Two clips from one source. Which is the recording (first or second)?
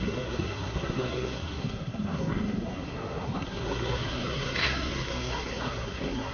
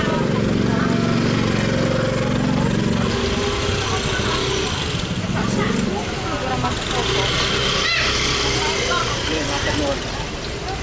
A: second